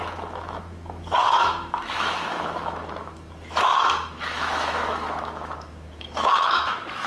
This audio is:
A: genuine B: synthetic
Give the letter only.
B